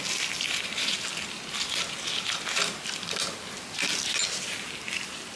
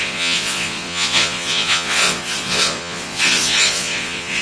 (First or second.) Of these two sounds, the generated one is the second